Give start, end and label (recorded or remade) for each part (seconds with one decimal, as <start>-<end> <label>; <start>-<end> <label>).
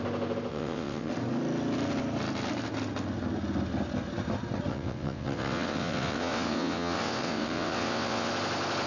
0.0-0.5 recorded; 0.5-1.1 remade; 1.1-4.7 recorded; 4.7-8.3 remade; 8.3-8.9 recorded